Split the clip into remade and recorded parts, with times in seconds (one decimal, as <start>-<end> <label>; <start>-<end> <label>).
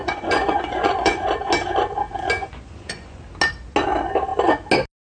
0.0-1.2 remade; 1.2-2.4 recorded; 2.4-3.2 remade; 3.2-5.1 recorded